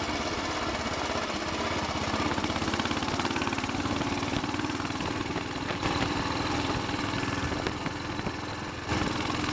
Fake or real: real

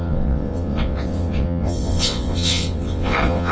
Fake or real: fake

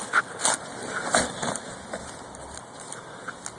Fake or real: real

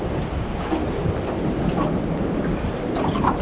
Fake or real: real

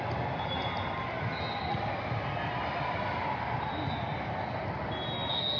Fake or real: real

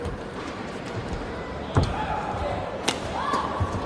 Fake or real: fake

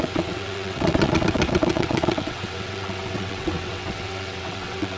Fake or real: fake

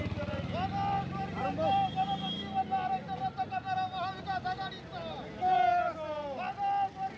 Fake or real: real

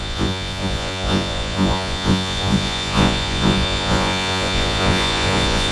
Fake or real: fake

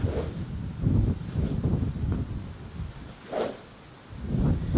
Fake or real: real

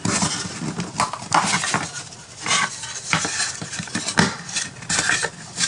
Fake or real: real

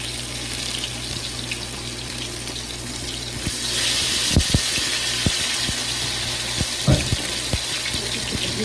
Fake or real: real